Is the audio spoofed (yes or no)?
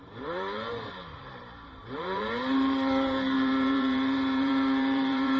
yes